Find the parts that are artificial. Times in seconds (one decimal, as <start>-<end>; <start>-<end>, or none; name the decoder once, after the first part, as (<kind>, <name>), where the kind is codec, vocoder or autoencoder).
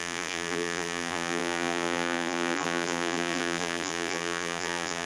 0.0-5.1 (vocoder, BigVGAN v2)